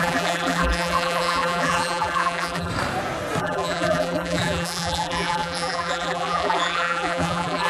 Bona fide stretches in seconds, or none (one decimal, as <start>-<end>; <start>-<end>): 2.7-3.4